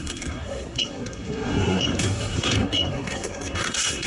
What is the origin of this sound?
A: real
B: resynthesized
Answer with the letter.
B